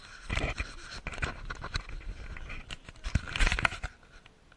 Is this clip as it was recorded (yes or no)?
yes